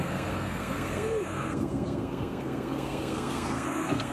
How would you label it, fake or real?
fake